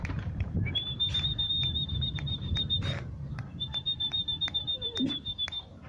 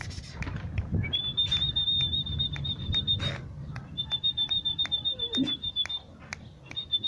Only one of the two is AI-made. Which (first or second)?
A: first